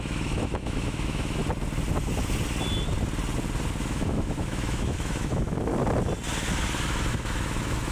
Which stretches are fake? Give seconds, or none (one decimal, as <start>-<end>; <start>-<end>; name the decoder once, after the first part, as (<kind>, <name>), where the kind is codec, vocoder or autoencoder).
0.0-1.4 (autoencoder, DAC-VAE); 3.8-5.7; 7.1-7.9